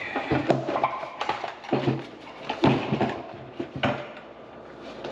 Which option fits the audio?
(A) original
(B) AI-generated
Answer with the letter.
B